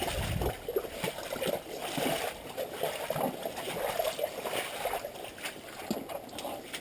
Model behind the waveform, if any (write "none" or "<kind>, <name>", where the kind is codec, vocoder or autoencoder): none